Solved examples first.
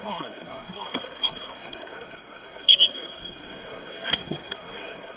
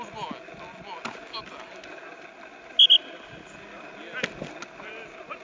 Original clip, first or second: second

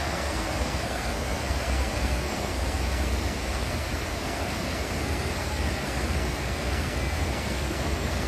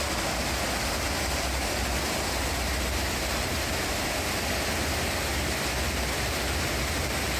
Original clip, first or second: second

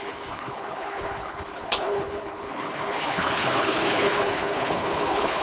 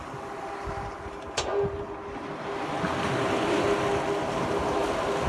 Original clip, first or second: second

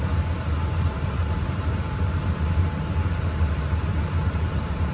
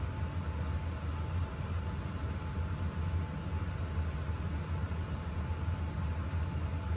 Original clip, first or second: second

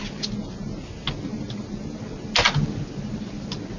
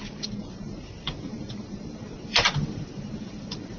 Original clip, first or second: first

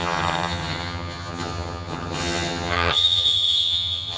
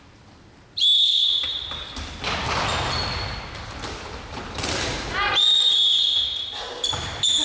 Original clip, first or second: second